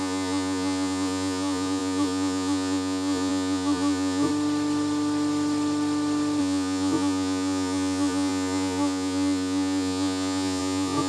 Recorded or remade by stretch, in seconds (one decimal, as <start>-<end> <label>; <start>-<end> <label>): 0.0-4.3 remade; 4.3-6.4 recorded; 6.4-11.1 remade